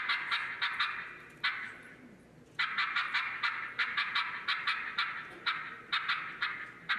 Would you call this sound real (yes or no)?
yes